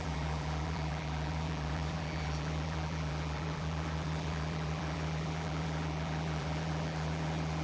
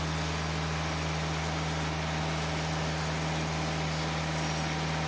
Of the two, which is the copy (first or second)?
first